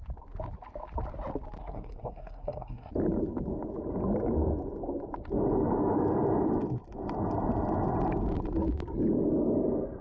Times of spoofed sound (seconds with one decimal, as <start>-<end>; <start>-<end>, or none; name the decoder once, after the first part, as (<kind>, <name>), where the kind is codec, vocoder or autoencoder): 1.6-2.9 (codec, SNAC)